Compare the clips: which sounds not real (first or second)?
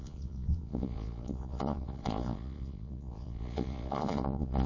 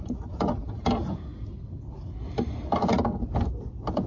first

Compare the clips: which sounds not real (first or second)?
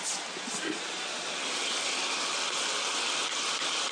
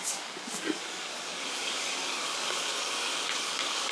second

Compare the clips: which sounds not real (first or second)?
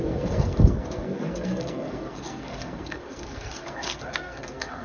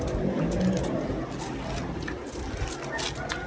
first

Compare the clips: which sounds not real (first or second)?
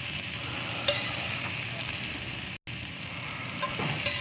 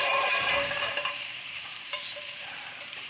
second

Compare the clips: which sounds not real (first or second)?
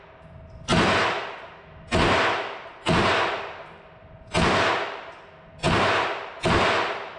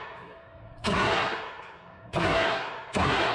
second